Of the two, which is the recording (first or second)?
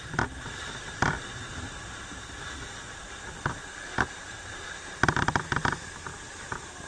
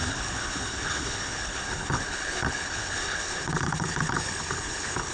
first